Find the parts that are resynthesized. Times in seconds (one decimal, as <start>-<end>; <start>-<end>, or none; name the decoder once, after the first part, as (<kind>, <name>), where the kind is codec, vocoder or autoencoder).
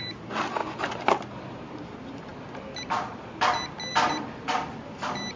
0.0-0.6 (vocoder, BigVGAN v2); 1.3-2.3; 3.9-5.4